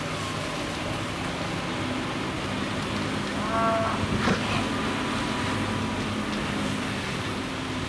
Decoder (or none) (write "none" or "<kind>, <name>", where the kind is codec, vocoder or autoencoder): none